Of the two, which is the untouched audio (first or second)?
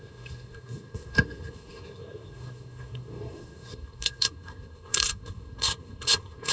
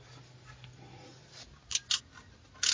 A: second